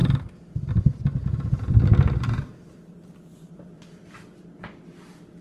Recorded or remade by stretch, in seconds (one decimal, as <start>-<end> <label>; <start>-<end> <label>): 0.0-0.7 remade; 0.7-1.2 recorded; 1.2-1.8 remade; 1.8-5.4 recorded